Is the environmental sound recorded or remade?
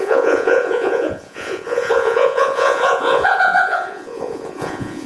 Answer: remade